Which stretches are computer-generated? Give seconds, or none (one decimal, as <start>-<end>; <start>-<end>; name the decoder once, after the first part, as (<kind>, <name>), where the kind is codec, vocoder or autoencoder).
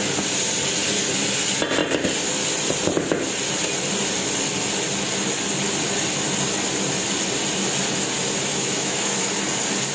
8.5-9.3 (autoencoder, DAC-VAE)